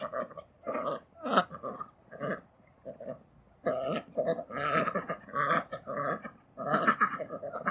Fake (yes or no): no